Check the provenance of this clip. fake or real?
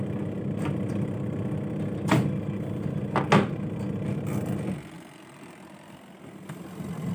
real